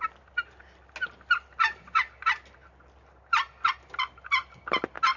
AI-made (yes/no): no